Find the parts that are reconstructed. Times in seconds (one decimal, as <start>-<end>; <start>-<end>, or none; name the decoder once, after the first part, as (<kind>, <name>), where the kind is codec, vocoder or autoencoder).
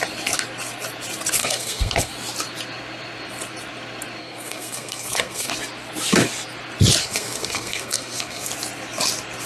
1.4-2.1 (codec, SNAC); 4.2-5.5; 7.0-8.5